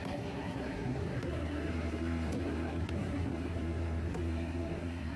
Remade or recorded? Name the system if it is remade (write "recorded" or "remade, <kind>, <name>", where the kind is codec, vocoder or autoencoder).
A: remade, codec, SNAC